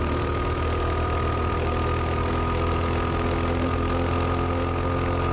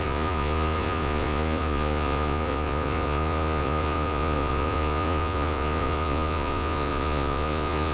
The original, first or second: first